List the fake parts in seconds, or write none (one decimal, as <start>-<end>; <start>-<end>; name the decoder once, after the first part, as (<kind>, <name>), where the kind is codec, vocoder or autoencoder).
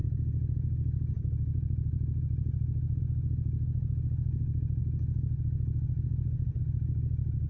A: none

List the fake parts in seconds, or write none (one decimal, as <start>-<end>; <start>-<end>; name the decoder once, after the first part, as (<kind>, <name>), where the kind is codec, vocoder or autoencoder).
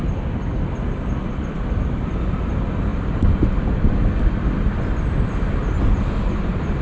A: none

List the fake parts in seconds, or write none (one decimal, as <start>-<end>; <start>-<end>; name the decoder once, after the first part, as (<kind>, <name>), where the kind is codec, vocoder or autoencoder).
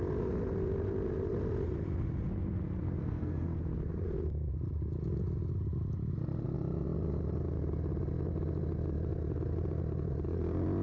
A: 3.0-3.6 (codec, SNAC)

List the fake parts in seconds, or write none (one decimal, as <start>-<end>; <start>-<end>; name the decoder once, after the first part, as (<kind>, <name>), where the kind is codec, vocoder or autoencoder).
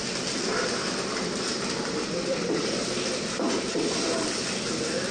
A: 1.5-3.6 (vocoder, BigVGAN v2)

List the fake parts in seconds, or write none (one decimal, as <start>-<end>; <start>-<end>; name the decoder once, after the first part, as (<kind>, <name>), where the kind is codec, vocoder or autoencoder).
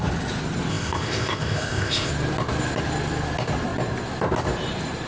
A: 0.7-2.1 (codec, ZipCodec)